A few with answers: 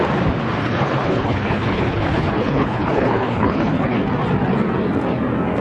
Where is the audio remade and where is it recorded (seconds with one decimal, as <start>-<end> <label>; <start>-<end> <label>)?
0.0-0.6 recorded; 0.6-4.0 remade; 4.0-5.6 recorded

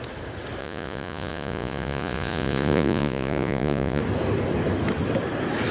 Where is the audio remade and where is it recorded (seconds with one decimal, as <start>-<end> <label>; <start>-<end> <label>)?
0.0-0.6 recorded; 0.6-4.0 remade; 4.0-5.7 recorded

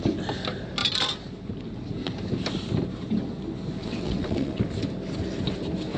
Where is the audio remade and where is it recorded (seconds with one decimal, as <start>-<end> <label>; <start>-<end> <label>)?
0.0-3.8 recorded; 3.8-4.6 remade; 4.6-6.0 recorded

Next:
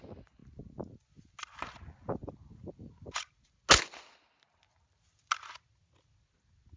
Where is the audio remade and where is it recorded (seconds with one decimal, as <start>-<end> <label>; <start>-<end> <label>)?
0.0-6.8 recorded

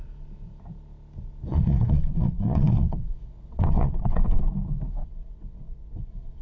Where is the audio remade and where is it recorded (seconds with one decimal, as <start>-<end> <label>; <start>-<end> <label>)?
0.0-1.5 recorded; 1.5-4.4 remade; 4.4-5.0 recorded; 5.0-6.4 remade

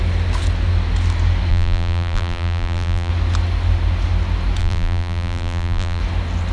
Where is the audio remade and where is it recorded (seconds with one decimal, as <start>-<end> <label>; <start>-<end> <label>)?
0.0-1.5 recorded; 1.5-3.1 remade; 3.1-4.6 recorded; 4.6-6.0 remade; 6.0-6.5 recorded

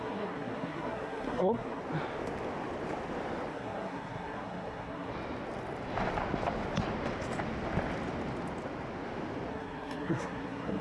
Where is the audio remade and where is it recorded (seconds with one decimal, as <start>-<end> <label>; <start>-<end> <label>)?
0.0-1.8 remade; 1.8-3.5 recorded; 3.5-5.1 remade; 5.1-9.5 recorded; 9.5-10.8 remade